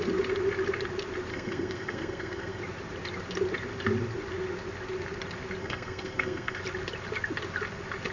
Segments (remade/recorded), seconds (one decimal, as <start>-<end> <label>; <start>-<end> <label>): 0.0-1.3 recorded; 1.3-2.6 remade; 2.6-5.6 recorded; 5.6-6.6 remade; 6.6-8.1 recorded